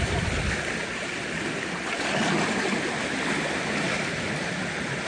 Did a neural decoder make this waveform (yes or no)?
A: no